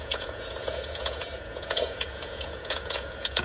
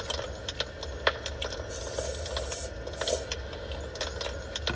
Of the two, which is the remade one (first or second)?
first